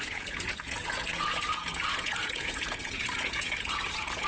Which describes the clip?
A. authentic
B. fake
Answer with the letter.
B